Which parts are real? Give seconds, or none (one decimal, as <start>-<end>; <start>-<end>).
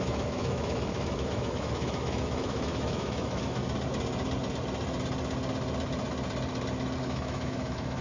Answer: 3.6-7.0